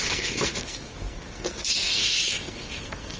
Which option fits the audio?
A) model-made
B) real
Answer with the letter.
A